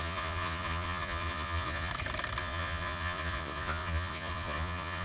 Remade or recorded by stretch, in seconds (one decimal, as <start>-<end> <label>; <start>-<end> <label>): 0.0-1.9 remade; 1.9-2.4 recorded; 2.4-5.0 remade